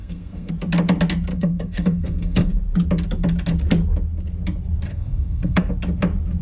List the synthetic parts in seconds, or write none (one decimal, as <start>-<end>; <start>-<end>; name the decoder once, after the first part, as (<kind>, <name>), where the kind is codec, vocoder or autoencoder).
0.0-0.5 (codec, SNAC); 1.3-2.6; 4.9-5.7